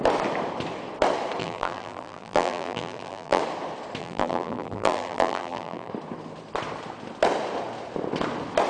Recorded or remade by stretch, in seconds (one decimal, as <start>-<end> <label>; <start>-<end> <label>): 0.0-1.4 recorded; 1.4-3.4 remade; 3.4-4.0 recorded; 4.0-5.9 remade; 5.9-8.7 recorded